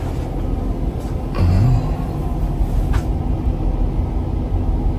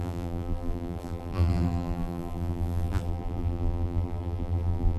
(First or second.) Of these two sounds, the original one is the first